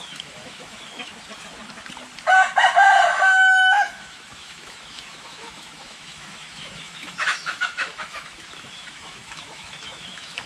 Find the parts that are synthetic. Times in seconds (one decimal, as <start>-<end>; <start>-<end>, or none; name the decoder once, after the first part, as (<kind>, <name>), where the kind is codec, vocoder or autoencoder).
0.0-1.1 (autoencoder, DAC-VAE); 3.1-10.5